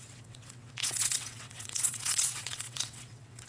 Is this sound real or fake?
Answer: fake